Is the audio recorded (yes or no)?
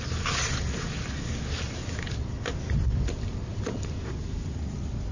yes